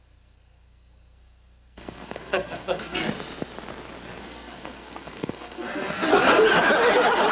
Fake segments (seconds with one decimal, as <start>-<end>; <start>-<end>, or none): 0.0-3.0; 4.2-6.1